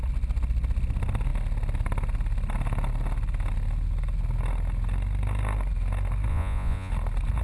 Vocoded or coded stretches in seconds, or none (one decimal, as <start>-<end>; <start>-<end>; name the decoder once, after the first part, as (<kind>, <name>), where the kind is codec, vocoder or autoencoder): 6.3-6.9 (vocoder, Vocos)